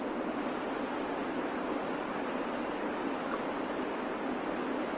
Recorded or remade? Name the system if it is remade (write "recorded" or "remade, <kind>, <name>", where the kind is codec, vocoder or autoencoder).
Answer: recorded